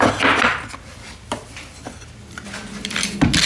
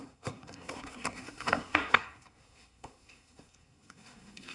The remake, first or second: second